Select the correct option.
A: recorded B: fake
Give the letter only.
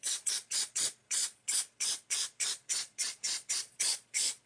B